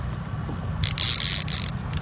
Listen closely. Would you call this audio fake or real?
real